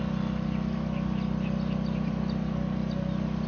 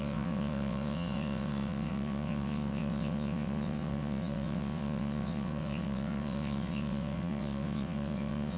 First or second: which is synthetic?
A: second